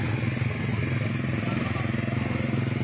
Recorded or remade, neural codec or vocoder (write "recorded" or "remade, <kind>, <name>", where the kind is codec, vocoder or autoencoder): recorded